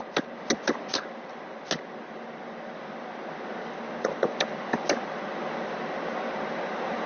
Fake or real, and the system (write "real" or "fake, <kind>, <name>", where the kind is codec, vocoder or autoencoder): real